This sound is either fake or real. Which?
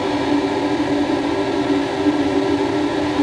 real